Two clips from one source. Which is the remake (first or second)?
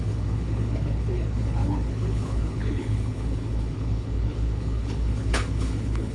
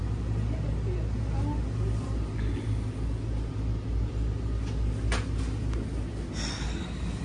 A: first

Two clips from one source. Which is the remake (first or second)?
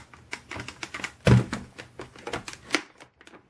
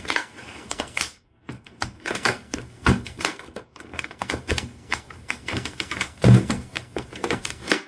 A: second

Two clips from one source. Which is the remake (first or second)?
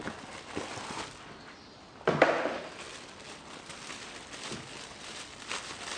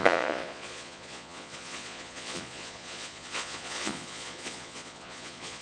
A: second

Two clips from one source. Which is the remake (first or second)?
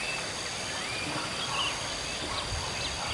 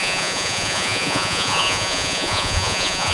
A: second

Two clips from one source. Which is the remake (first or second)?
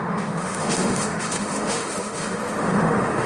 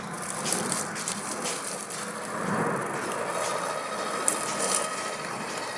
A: first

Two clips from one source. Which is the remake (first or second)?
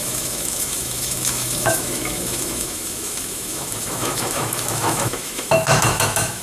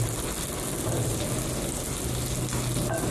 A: first